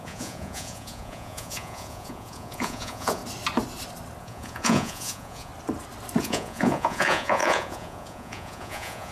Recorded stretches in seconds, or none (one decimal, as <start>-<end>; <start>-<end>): 3.2-4.2; 5.5-6.2